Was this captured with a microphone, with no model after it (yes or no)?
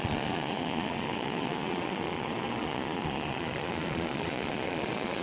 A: no